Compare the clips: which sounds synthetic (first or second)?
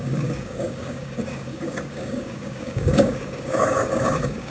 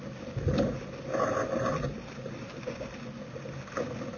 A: first